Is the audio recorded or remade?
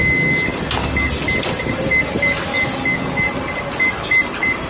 recorded